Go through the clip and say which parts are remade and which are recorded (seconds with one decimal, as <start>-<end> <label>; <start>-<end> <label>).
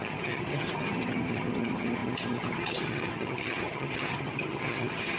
0.0-5.2 remade